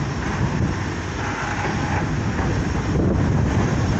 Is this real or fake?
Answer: real